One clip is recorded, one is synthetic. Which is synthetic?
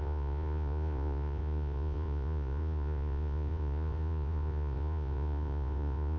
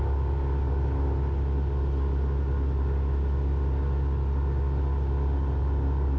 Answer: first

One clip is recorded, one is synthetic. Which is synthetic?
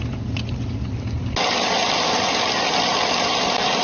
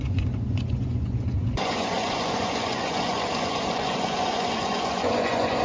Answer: second